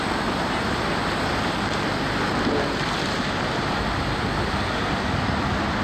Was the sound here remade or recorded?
remade